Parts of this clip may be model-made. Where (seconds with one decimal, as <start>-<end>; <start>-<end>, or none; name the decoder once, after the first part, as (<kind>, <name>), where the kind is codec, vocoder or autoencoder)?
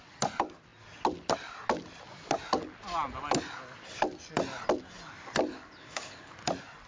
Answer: 5.5-6.3 (codec, HILCodec)